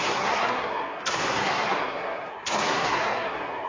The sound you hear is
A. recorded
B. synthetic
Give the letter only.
B